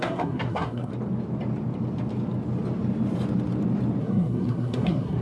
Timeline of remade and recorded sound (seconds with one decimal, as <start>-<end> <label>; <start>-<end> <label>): 0.0-0.9 remade; 0.9-4.0 recorded; 4.0-5.2 remade